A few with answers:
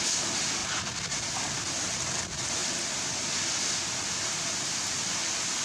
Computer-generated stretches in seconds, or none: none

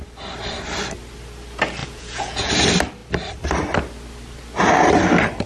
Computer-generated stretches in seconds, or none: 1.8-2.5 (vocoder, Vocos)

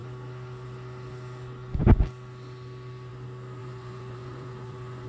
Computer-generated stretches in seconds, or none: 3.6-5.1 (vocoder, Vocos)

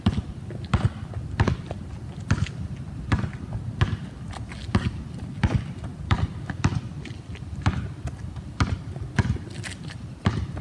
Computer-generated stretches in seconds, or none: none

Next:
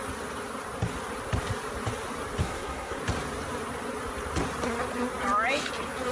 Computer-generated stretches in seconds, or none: 2.4-3.0 (codec, SNAC)

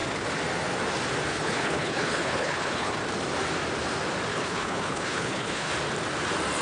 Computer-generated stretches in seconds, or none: 1.3-2.9 (codec, HILCodec); 4.3-5.7